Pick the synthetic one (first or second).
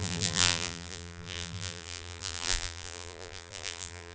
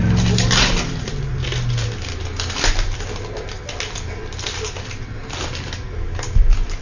first